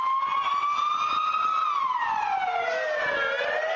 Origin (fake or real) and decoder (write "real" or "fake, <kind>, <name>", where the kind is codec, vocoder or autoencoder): real